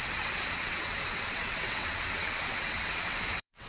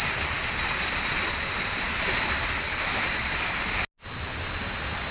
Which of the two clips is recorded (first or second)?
second